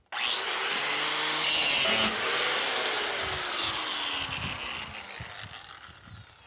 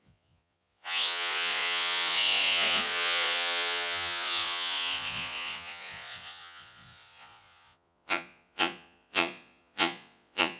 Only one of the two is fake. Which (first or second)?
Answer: second